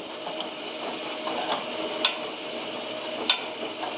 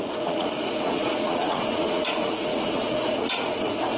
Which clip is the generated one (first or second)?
second